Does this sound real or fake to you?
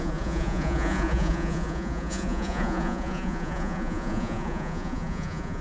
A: fake